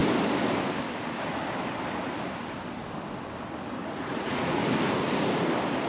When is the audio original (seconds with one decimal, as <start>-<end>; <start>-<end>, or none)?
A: 0.0-3.8; 4.6-5.9